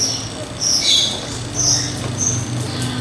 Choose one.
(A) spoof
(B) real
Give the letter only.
B